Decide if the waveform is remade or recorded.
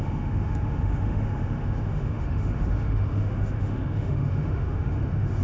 remade